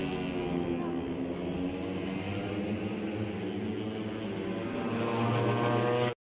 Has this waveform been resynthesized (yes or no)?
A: no